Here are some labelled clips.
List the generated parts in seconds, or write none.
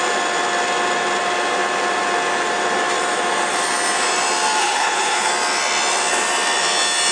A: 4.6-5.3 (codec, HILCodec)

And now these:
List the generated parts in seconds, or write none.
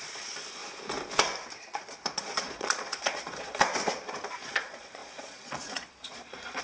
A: 0.0-0.6 (vocoder, Vocos); 1.5-3.6; 4.3-6.6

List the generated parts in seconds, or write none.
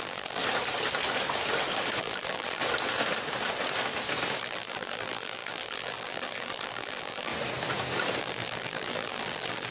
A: 0.0-0.4 (vocoder, BigVGAN v2); 2.0-2.6; 4.4-7.3; 8.2-9.7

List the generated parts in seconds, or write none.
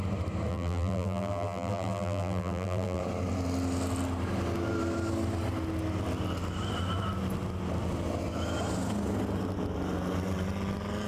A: 0.5-3.0 (vocoder, BigVGAN v2)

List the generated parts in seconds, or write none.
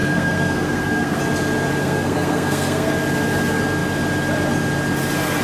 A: 0.0-1.2 (codec, SNAC); 1.8-2.9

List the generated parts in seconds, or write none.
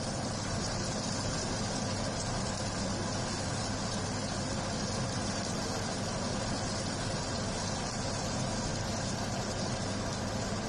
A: none